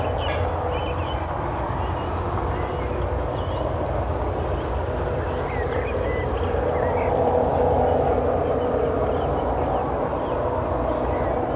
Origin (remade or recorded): recorded